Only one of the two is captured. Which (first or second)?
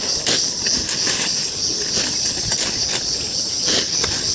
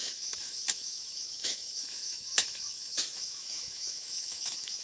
first